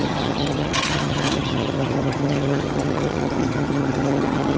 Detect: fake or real fake